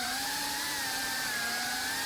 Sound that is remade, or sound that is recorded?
remade